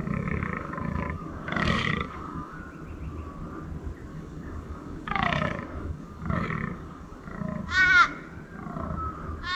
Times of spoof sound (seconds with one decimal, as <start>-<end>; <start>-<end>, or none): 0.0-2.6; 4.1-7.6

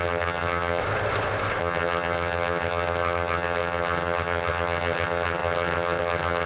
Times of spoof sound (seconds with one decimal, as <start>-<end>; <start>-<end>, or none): 0.0-0.8; 1.6-6.5

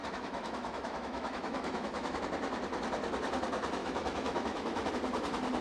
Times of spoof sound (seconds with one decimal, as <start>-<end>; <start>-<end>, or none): 0.0-2.2; 3.8-4.9

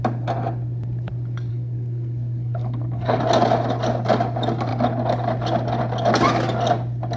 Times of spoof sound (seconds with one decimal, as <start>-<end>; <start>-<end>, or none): 1.5-3.2

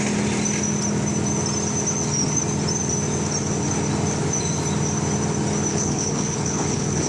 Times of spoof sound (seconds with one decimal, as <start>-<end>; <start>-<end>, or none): 5.7-7.1

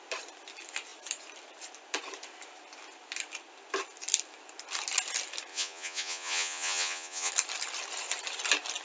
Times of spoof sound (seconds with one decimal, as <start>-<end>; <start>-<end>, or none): 5.5-7.3